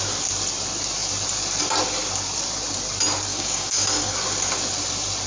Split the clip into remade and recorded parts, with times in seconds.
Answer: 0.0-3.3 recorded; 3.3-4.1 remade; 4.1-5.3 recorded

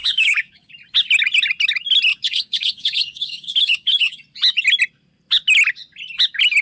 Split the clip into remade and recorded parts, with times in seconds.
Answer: 0.0-0.7 remade; 0.7-2.1 recorded; 2.1-4.2 remade; 4.2-6.6 recorded

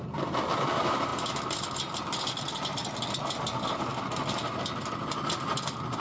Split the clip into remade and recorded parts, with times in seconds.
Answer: 0.0-6.0 recorded

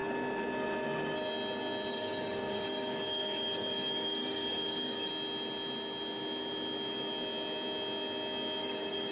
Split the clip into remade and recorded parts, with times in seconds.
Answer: 0.0-1.9 recorded; 1.9-5.1 remade; 5.1-8.6 recorded; 8.6-9.1 remade